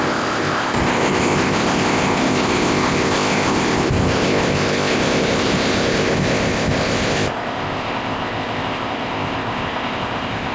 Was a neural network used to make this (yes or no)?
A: yes